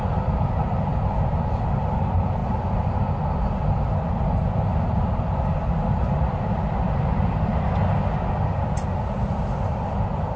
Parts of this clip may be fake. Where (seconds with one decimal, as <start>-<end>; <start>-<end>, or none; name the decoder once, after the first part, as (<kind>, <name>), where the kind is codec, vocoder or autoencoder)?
none